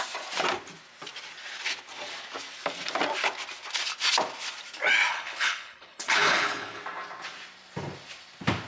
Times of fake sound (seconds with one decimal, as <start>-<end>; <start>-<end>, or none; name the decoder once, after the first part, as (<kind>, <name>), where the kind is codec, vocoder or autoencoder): 5.1-6.8 (codec, HILCodec)